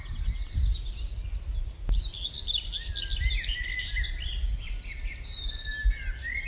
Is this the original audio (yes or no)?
yes